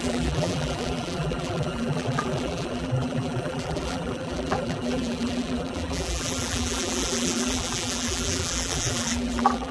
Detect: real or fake fake